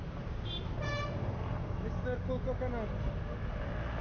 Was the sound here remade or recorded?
recorded